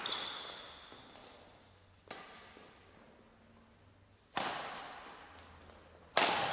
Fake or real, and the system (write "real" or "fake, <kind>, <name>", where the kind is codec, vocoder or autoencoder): real